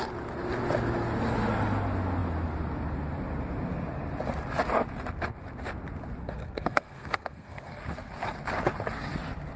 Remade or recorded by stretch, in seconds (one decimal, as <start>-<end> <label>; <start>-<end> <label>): 0.0-6.2 recorded; 6.2-7.8 remade; 7.8-9.6 recorded